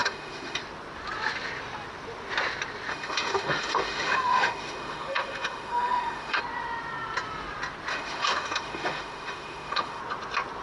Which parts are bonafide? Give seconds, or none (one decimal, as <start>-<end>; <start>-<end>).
0.6-2.9; 6.4-7.9; 10.0-10.6